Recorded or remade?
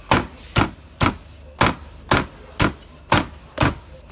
recorded